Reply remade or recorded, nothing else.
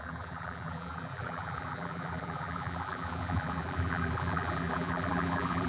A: remade